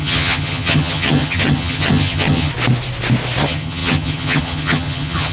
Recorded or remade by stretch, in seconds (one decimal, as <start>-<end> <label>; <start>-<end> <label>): 0.0-2.5 remade; 2.5-3.4 recorded; 3.4-5.3 remade